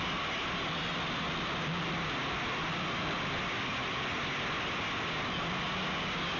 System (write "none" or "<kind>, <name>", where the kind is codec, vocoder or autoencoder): none